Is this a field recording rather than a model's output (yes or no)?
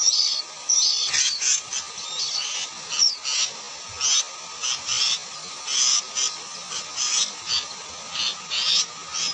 yes